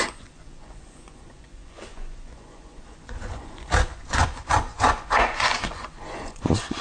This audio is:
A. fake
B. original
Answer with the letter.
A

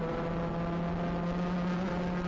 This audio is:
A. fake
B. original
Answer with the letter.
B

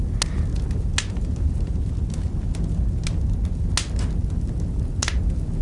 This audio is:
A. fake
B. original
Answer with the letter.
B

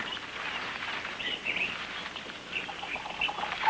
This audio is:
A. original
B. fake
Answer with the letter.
A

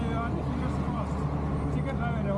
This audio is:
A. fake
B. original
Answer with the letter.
B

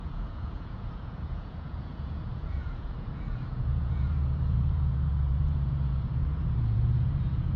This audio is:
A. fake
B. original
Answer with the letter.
A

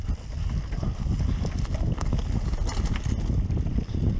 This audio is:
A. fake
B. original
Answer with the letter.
B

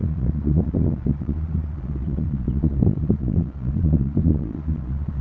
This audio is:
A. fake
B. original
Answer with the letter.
A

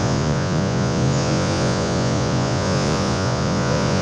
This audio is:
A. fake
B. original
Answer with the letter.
A